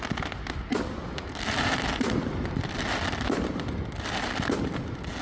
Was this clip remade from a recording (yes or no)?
no